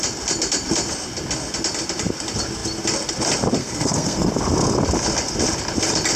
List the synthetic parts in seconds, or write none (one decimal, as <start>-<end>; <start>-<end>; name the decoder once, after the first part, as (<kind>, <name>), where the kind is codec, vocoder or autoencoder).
3.6-4.3 (codec, SNAC)